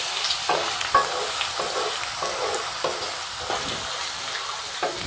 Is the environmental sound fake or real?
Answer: real